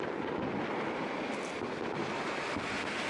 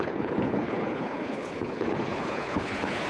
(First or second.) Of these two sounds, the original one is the first